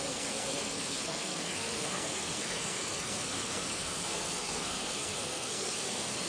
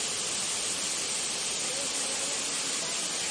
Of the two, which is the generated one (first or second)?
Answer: first